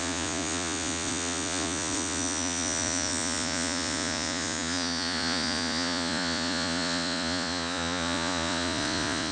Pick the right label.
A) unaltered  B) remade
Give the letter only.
B